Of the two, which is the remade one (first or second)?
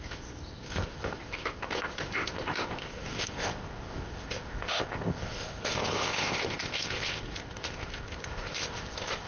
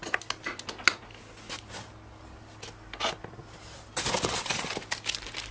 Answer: first